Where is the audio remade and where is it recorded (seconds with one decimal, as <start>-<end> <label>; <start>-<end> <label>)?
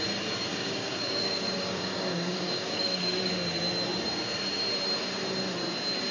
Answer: 0.0-0.5 recorded; 0.5-3.3 remade; 3.3-6.1 recorded